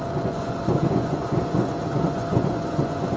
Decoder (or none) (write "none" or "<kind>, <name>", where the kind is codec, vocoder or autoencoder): vocoder, Vocos